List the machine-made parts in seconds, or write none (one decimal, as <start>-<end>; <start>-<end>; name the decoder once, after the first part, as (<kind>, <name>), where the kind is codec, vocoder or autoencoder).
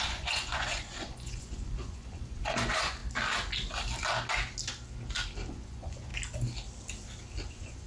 0.0-3.0 (vocoder, Vocos); 5.5-6.1; 7.5-7.9